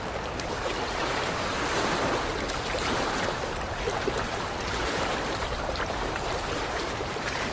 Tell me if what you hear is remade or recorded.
remade